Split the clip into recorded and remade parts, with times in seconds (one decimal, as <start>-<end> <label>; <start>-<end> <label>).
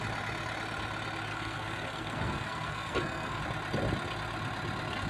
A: 0.0-1.3 recorded; 1.3-3.4 remade; 3.4-5.1 recorded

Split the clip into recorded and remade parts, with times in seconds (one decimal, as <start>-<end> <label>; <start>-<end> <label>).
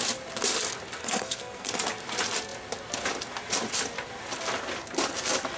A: 0.0-1.0 recorded; 1.0-1.7 remade; 1.7-5.6 recorded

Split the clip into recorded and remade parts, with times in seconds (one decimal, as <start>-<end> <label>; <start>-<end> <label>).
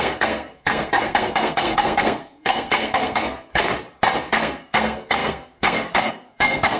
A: 0.0-3.7 remade; 3.7-4.2 recorded; 4.2-6.8 remade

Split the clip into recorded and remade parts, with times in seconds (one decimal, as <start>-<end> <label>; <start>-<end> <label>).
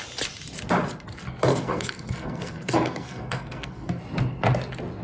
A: 0.0-1.5 recorded; 1.5-4.0 remade; 4.0-5.0 recorded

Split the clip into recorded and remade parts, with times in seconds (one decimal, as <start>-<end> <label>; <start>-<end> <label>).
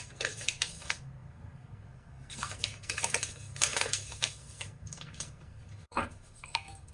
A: 0.0-6.9 remade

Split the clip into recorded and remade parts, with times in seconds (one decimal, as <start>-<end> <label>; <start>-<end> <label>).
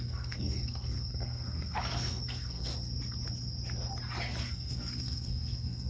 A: 0.0-2.7 remade; 2.7-4.4 recorded; 4.4-5.9 remade